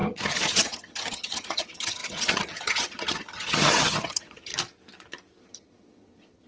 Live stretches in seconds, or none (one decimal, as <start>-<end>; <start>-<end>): 4.5-5.4